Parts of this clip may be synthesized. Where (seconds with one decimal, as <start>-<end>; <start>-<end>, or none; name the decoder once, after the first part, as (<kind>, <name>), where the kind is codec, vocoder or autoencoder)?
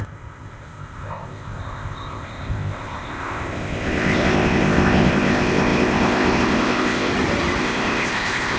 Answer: 0.0-7.1 (codec, ZipCodec); 7.6-8.6